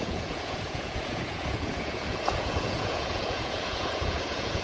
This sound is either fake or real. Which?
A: fake